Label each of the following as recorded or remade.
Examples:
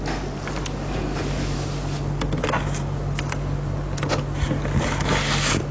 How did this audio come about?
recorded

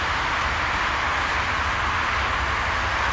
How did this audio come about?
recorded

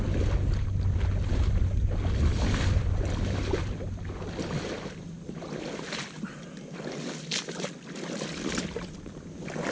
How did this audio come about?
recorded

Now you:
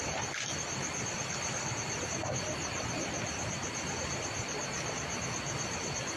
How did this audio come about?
recorded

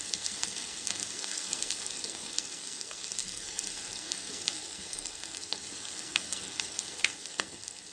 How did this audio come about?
remade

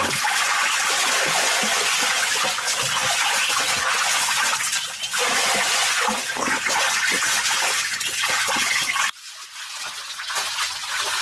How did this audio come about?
remade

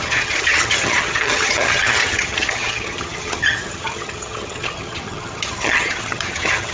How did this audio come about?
remade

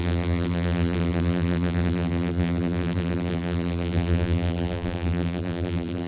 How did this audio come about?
remade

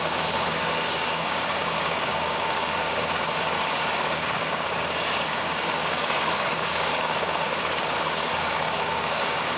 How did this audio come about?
remade